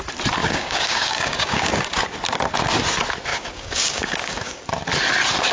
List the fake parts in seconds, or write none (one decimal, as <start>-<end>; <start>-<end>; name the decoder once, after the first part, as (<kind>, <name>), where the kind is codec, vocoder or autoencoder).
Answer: 0.4-1.7 (codec, DAC); 3.3-4.6